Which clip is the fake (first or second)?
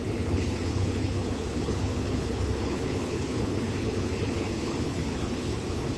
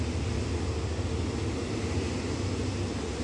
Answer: first